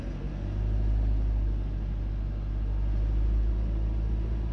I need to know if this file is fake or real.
real